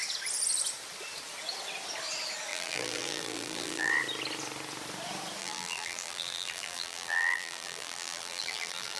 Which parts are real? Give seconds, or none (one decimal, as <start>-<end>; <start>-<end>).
0.0-2.5; 3.9-5.4